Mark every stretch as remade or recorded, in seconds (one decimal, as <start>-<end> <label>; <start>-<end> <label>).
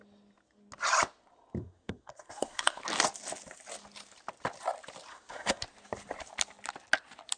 0.0-1.6 recorded; 1.6-2.8 remade; 2.8-5.1 recorded; 5.1-5.6 remade; 5.6-7.4 recorded